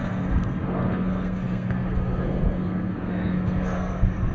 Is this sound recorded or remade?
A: remade